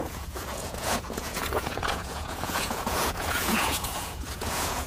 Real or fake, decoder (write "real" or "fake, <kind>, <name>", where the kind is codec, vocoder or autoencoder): fake, vocoder, Vocos